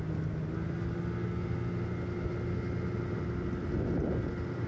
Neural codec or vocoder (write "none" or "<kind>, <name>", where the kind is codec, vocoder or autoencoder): none